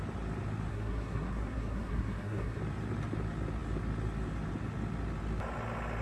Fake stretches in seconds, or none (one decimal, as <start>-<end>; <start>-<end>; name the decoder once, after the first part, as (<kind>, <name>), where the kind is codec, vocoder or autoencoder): 0.7-2.6 (codec, SNAC)